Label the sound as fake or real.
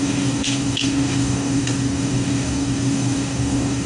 fake